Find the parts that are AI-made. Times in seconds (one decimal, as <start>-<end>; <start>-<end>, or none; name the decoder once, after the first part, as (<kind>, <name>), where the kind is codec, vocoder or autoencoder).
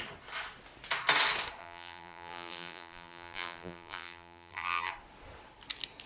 1.6-4.9 (vocoder, BigVGAN v2)